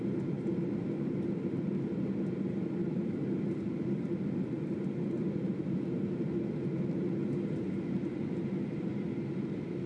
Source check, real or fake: real